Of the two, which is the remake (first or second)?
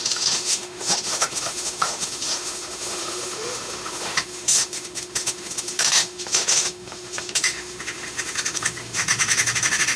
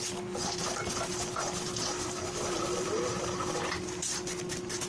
first